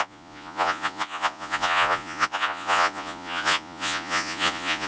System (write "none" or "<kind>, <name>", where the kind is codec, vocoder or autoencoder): vocoder, Vocos